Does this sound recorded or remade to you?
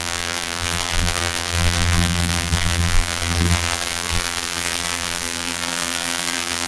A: remade